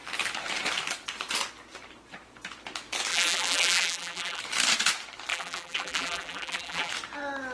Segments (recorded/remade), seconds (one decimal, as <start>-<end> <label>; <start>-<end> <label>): 0.0-3.1 recorded; 3.1-4.4 remade; 4.4-5.3 recorded; 5.3-6.9 remade; 6.9-7.5 recorded